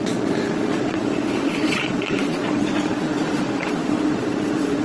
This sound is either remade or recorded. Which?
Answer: remade